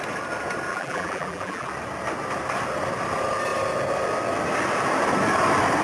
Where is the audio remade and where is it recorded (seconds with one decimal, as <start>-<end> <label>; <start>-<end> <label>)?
0.0-0.7 recorded; 0.7-1.7 remade; 1.7-5.8 recorded